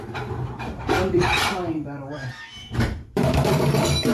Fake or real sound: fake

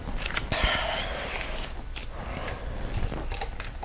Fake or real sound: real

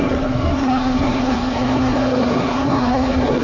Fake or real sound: fake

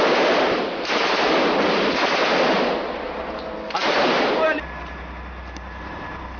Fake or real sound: real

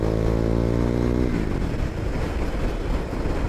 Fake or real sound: real